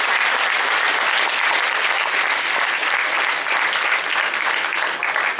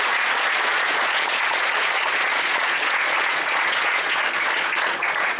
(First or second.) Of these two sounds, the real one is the first